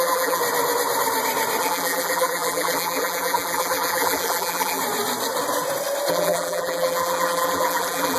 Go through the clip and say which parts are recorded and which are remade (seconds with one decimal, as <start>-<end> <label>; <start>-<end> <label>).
0.0-0.4 remade; 0.4-1.6 recorded; 1.6-4.8 remade; 4.8-6.1 recorded; 6.1-8.2 remade